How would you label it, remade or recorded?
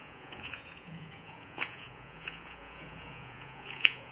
remade